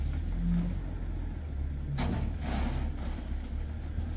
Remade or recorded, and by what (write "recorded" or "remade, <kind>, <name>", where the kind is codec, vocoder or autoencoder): recorded